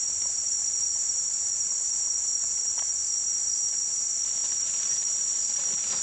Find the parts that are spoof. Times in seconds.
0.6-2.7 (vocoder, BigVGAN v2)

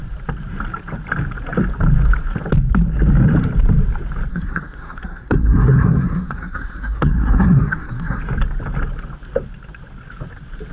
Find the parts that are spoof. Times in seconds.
4.3-8.2 (codec, SNAC)

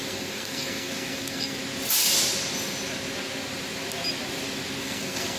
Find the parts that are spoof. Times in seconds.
0.0-1.6 (codec, SNAC); 4.8-5.4